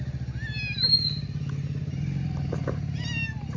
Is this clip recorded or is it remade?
recorded